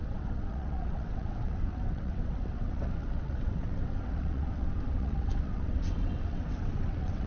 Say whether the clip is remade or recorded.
remade